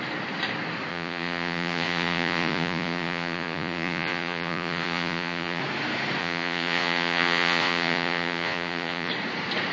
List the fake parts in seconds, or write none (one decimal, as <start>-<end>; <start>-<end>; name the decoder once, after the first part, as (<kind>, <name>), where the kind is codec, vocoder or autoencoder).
0.9-5.6 (vocoder, Vocos); 6.2-9.1